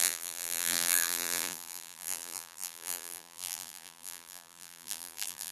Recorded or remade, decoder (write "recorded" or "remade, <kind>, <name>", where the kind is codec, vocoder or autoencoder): remade, vocoder, BigVGAN v2